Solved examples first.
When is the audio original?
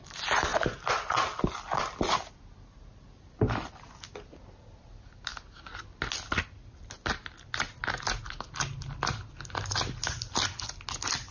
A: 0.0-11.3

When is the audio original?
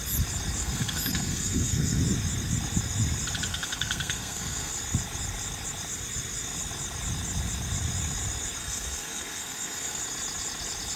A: 0.0-0.6; 2.0-3.5; 4.7-8.6; 10.0-11.0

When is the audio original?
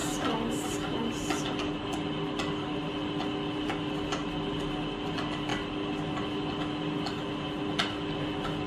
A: 0.0-8.7